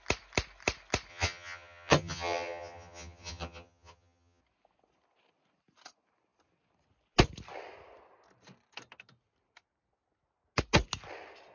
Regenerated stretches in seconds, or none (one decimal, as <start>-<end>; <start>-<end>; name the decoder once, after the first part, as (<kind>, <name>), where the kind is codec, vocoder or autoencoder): 1.1-4.4 (vocoder, HiFi-GAN)